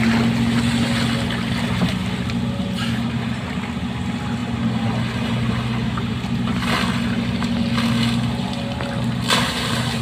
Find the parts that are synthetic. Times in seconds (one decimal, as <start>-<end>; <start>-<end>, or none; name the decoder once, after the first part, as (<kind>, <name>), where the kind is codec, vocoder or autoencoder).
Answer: none